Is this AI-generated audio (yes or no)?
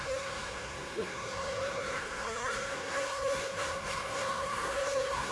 yes